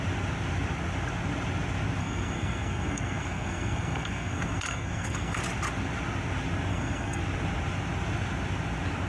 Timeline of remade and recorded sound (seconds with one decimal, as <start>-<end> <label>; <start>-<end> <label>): 0.0-2.0 recorded; 2.0-5.4 remade; 5.4-6.7 recorded; 6.7-7.2 remade; 7.2-9.1 recorded